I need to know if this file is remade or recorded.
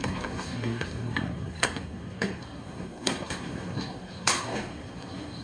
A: remade